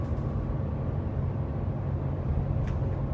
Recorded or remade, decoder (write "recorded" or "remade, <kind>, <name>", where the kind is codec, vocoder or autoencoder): recorded